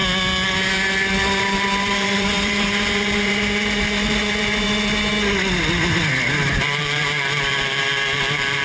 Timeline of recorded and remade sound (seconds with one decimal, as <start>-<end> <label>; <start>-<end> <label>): 0.0-1.4 recorded; 1.4-5.1 remade; 5.1-6.5 recorded; 6.5-8.6 remade